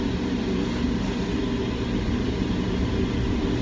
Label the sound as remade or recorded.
recorded